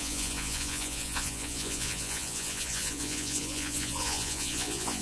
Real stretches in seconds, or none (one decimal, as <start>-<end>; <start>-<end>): none